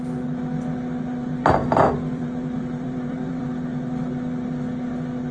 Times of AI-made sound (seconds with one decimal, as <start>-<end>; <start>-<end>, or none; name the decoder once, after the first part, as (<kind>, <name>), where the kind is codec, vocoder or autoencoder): 1.2-3.4 (vocoder, BigVGAN v2)